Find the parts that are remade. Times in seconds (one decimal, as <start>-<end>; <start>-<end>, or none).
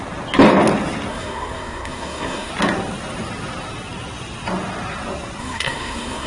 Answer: 1.1-2.5; 5.4-6.3